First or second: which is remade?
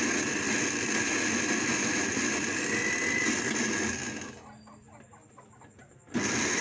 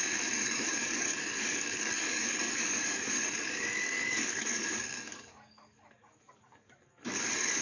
second